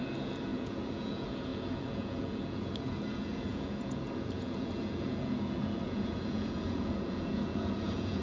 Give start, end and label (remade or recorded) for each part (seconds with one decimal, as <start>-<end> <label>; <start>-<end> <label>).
0.0-8.2 remade